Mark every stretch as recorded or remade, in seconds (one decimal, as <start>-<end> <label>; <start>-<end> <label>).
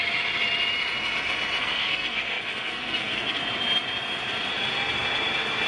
0.0-1.6 recorded; 1.6-3.4 remade; 3.4-5.7 recorded